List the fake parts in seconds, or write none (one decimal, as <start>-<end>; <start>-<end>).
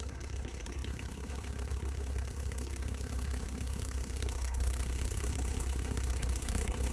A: 0.0-6.9